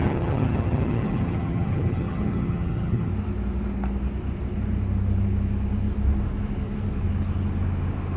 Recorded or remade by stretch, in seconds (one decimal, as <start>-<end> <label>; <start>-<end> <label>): 0.0-3.1 remade; 3.1-8.2 recorded